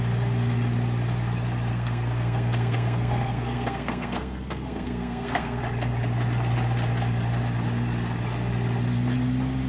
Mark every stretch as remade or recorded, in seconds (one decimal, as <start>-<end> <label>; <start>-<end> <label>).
0.0-1.7 recorded; 1.7-5.6 remade; 5.6-9.7 recorded